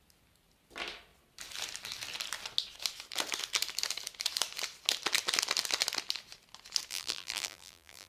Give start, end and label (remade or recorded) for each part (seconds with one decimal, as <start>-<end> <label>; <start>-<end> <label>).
0.0-6.9 recorded; 6.9-8.1 remade